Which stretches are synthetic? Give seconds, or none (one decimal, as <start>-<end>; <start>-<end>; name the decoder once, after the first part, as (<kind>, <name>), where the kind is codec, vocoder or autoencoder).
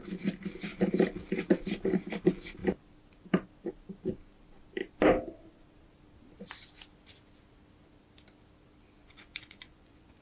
9.0-10.2 (vocoder, Vocos)